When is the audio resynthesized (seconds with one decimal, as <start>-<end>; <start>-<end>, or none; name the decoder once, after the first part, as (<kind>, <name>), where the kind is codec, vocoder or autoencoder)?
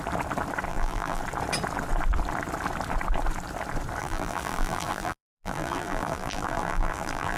0.7-1.2 (vocoder, BigVGAN v2); 4.0-7.4